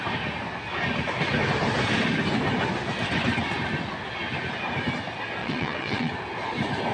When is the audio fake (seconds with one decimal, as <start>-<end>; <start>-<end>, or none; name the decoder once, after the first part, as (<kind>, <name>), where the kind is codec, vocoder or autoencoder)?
5.4-6.1 (vocoder, WaveNeXt)